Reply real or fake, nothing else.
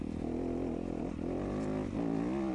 real